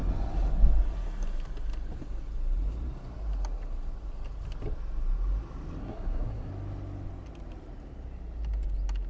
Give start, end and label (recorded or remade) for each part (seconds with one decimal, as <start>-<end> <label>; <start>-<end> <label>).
0.0-5.8 recorded; 5.8-6.5 remade; 6.5-9.1 recorded